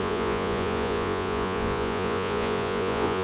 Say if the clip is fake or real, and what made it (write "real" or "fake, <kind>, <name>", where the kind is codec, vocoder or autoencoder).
fake, vocoder, Vocos